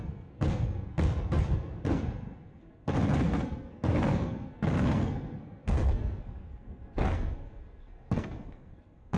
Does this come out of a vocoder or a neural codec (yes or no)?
yes